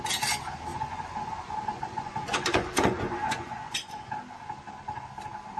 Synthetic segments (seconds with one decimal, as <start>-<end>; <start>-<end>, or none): 0.7-4.1